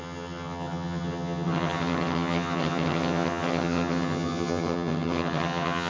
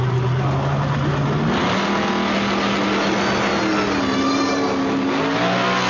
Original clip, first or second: second